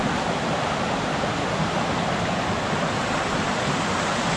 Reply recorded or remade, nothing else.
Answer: recorded